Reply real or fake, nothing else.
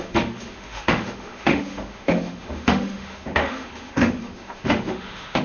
fake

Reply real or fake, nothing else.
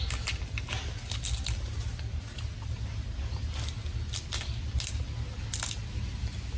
real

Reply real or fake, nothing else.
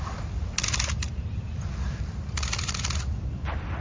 real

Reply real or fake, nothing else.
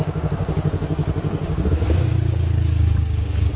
fake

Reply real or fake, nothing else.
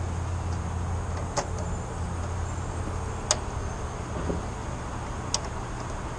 real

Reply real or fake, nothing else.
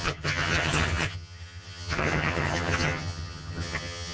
fake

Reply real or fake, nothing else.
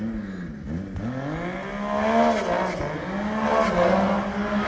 real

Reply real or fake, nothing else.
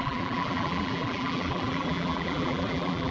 fake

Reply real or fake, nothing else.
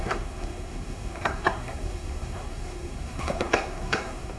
fake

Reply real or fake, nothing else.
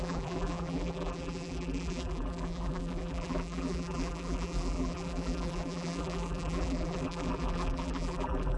fake